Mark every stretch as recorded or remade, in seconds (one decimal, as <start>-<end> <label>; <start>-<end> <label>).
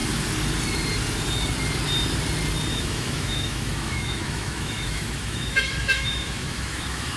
0.0-2.7 recorded; 2.7-7.2 remade